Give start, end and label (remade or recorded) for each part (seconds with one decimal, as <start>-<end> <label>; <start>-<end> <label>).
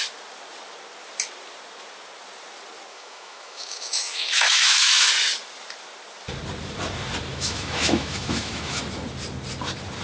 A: 0.0-2.9 recorded; 2.9-5.1 remade; 5.1-7.3 recorded; 7.3-8.8 remade; 8.8-10.0 recorded